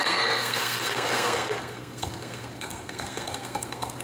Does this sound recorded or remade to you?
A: remade